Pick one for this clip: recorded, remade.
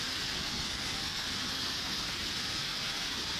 remade